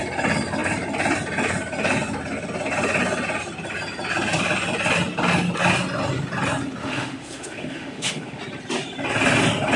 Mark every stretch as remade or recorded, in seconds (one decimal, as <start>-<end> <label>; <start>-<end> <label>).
0.0-6.8 recorded; 6.8-8.4 remade; 8.4-9.8 recorded